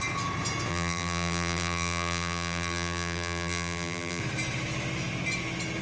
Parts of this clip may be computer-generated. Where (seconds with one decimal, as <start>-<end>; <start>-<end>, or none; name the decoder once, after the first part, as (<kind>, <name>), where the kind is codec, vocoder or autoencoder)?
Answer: 0.7-4.2 (vocoder, BigVGAN v2)